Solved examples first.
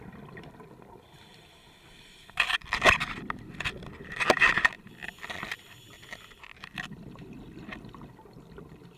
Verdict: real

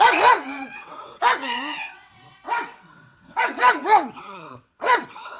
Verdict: fake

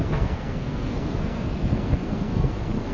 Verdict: fake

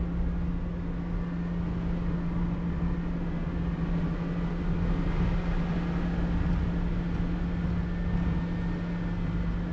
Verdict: real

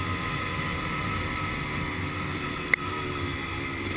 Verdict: real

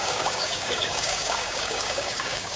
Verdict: fake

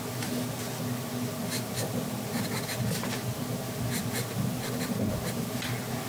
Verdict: real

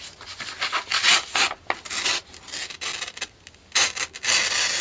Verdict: real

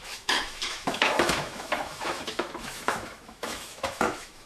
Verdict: fake